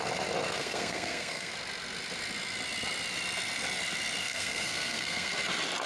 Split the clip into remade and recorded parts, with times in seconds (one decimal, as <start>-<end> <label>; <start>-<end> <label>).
0.0-0.6 recorded; 0.6-1.5 remade; 1.5-4.2 recorded; 4.2-5.3 remade; 5.3-5.9 recorded